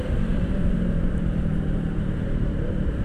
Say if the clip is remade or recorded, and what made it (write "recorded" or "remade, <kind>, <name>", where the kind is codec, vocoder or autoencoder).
remade, vocoder, BigVGAN v2